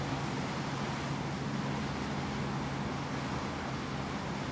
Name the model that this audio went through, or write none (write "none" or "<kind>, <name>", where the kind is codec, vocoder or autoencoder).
none